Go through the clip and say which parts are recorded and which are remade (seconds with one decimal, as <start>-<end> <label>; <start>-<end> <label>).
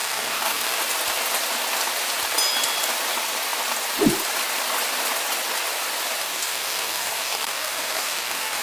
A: 0.0-0.8 remade; 0.8-6.2 recorded; 6.2-8.6 remade